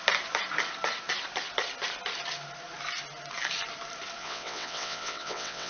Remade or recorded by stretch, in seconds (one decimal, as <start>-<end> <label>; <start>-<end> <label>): 0.0-4.2 recorded; 4.2-5.7 remade